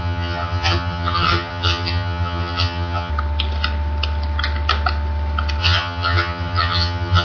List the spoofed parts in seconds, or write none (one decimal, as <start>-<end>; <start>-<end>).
0.0-3.1; 5.6-7.2